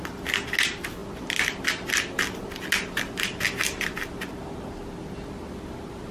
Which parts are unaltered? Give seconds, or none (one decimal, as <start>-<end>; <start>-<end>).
0.0-6.1